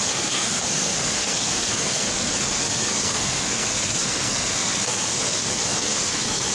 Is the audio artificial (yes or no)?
yes